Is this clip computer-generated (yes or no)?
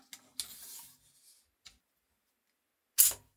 no